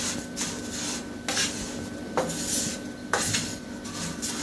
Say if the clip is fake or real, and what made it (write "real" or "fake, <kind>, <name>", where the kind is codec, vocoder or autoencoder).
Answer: real